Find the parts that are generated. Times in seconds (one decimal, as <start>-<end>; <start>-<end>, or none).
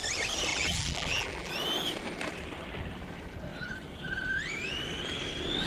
0.5-1.5